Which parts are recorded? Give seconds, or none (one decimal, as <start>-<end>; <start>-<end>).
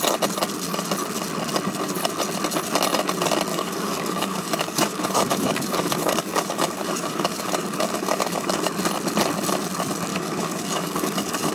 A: 0.0-3.5; 8.7-10.1